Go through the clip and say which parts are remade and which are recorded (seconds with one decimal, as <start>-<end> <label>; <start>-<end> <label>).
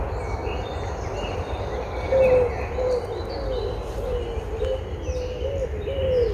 0.0-6.3 recorded